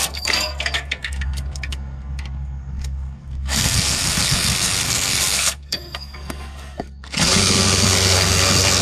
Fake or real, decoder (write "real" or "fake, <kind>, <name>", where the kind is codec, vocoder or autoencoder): fake, codec, SNAC